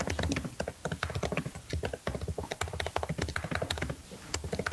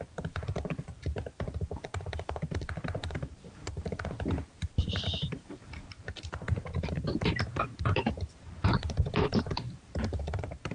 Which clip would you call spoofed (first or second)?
second